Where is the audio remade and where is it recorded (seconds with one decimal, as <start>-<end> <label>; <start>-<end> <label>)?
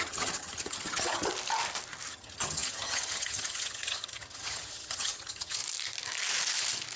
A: 0.0-1.3 remade; 1.3-2.1 recorded; 2.1-5.6 remade; 5.6-7.0 recorded